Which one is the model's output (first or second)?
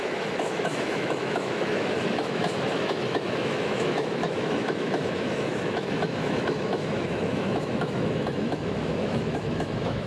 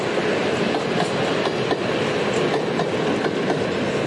first